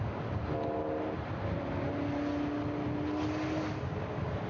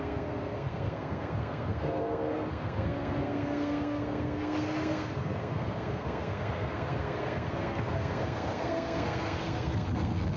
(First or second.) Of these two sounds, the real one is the first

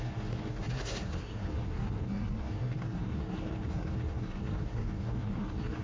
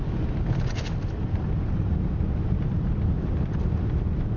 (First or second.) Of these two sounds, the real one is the second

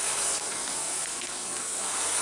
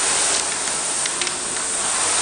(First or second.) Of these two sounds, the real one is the second